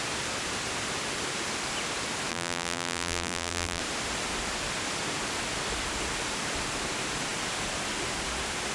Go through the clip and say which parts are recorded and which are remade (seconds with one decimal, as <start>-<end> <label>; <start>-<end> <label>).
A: 0.0-2.3 recorded; 2.3-3.8 remade; 3.8-8.7 recorded